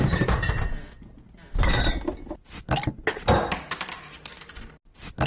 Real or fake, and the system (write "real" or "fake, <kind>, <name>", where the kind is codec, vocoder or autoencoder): real